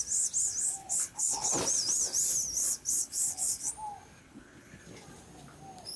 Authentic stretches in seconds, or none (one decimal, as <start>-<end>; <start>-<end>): 0.0-0.8; 1.5-2.6; 3.7-4.2; 4.8-6.0